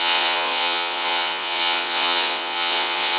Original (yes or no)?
no